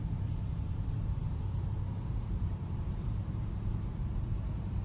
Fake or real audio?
fake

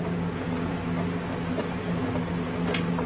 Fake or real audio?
real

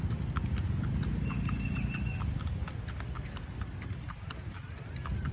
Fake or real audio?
real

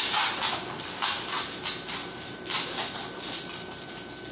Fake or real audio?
real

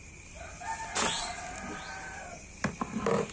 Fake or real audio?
real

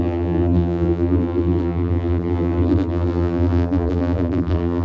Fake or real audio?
fake